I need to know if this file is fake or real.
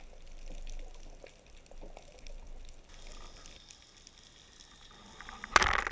real